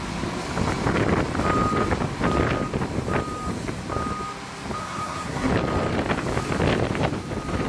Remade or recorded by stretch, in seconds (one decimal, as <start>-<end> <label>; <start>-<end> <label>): 0.0-4.8 recorded; 4.8-5.5 remade; 5.5-7.7 recorded